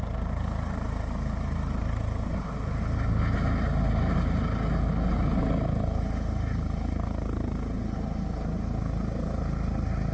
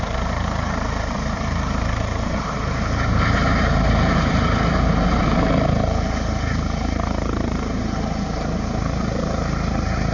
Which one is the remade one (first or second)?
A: second